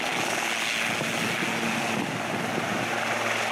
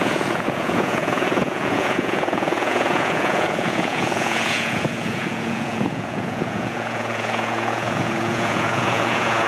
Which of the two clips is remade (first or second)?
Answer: second